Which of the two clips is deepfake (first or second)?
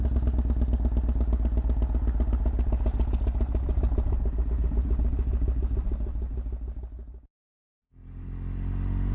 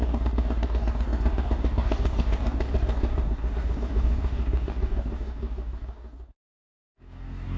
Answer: second